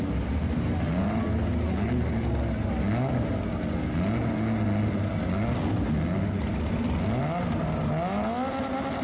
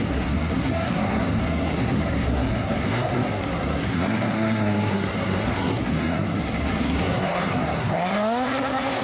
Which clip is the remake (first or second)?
second